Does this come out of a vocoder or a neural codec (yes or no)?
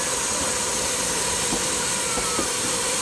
no